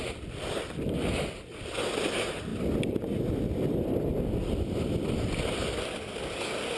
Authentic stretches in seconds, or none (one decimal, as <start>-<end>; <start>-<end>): 0.0-6.8